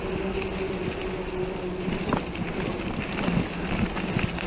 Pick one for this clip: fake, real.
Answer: real